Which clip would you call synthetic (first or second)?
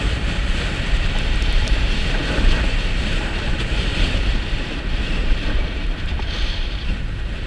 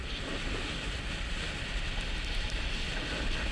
first